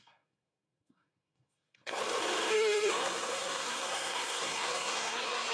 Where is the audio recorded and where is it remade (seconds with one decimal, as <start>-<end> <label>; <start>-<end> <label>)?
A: 0.0-2.0 remade; 2.0-2.5 recorded; 2.5-5.5 remade